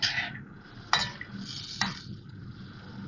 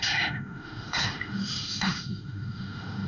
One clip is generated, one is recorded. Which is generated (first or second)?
second